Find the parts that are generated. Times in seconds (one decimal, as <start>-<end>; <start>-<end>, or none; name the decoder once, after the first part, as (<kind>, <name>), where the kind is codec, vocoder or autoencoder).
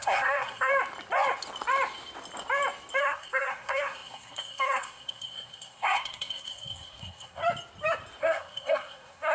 0.0-0.7 (codec, SNAC); 3.0-7.4; 8.2-9.3